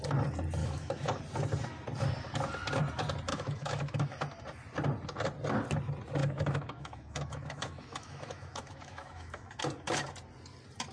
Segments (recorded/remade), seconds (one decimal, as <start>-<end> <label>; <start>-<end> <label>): 0.0-0.6 recorded; 0.6-1.2 remade; 1.2-3.3 recorded; 3.3-4.2 remade; 4.2-6.2 recorded; 6.2-9.6 remade; 9.6-10.9 recorded